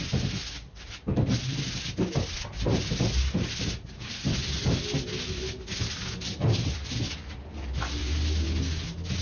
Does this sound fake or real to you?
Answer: real